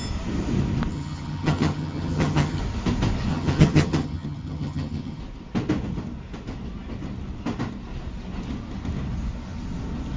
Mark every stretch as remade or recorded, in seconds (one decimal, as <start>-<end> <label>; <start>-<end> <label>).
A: 0.0-0.9 recorded; 0.9-2.6 remade; 2.6-3.3 recorded; 3.3-5.2 remade; 5.2-10.2 recorded